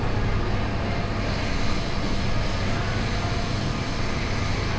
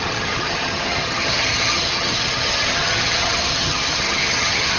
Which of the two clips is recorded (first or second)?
first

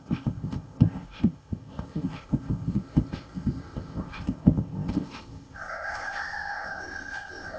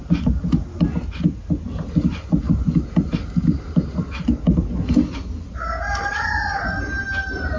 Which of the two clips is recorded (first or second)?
second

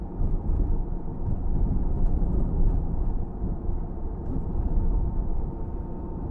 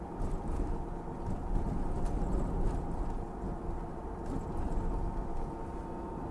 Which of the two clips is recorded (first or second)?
second